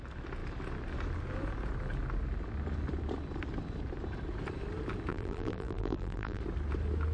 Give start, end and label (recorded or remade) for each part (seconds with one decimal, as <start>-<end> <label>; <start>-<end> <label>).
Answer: 0.0-5.1 recorded; 5.1-6.4 remade; 6.4-7.1 recorded